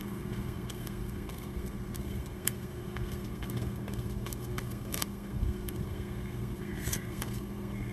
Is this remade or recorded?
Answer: remade